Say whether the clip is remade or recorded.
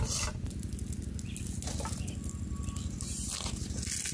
recorded